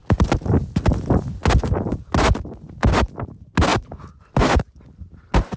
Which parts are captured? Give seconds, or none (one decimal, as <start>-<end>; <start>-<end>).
0.0-5.6